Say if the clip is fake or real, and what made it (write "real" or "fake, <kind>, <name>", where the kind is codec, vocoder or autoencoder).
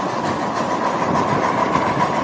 real